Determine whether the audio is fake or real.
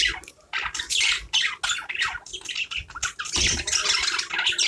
real